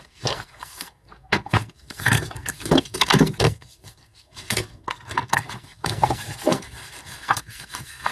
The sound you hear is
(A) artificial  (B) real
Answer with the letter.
A